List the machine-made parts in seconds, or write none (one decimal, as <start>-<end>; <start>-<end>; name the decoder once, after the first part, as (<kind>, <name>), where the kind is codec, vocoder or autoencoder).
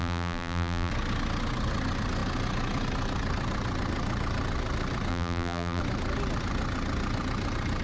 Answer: 0.0-0.9 (vocoder, BigVGAN v2); 5.1-5.8